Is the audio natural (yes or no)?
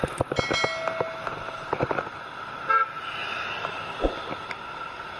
yes